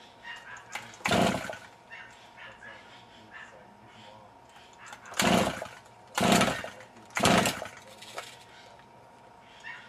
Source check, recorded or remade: recorded